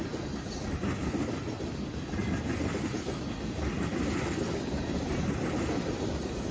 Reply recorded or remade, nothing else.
recorded